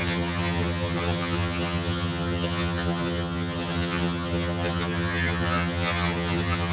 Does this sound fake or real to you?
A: fake